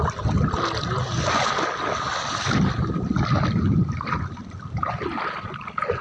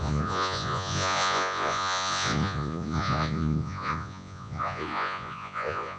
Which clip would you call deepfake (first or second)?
second